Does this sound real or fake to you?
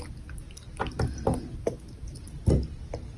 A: real